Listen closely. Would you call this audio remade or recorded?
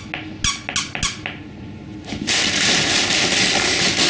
recorded